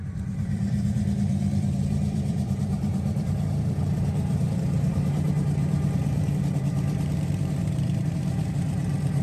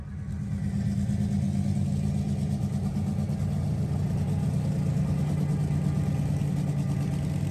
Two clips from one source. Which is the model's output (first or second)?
first